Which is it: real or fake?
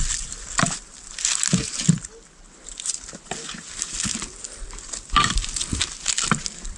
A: real